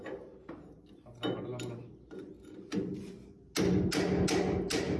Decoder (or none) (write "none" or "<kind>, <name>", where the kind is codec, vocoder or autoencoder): none